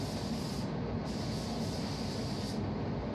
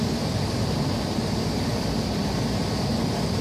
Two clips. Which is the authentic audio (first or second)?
first